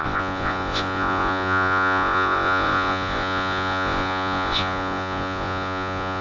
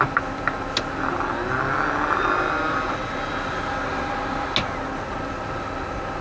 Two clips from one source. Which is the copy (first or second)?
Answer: first